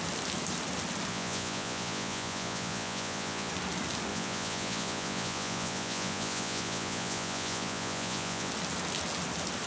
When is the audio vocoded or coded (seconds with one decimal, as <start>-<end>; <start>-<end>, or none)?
1.1-3.5; 4.1-8.5